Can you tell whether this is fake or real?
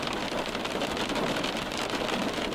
real